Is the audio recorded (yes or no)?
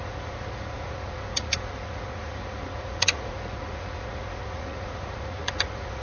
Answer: no